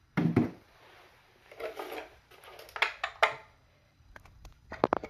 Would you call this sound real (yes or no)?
yes